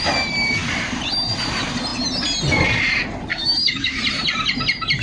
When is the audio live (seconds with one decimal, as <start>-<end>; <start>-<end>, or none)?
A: 0.0-3.3; 4.0-5.0